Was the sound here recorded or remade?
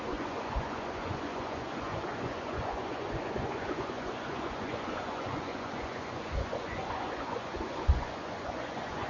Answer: remade